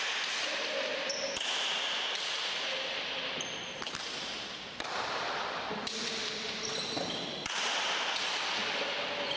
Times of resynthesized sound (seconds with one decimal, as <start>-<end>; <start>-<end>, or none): none